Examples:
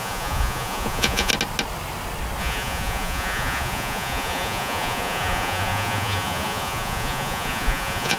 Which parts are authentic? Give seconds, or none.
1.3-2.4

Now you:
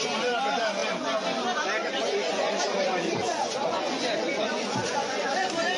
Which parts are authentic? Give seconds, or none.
0.0-1.8; 5.3-5.8

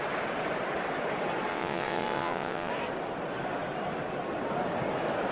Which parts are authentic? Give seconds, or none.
0.0-1.5; 2.7-5.3

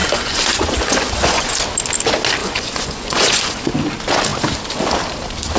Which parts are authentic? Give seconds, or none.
1.6-2.4; 3.7-5.6

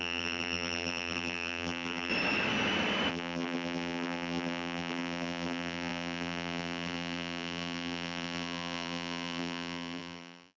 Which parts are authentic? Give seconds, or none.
2.1-3.1

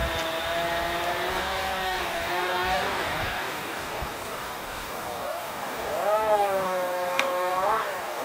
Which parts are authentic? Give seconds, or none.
0.0-1.3

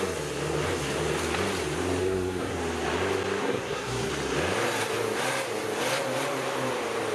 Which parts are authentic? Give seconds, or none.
0.0-2.0; 2.6-3.4; 4.1-7.1

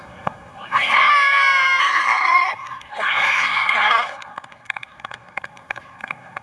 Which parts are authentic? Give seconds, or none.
1.1-1.8